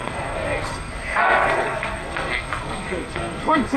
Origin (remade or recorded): remade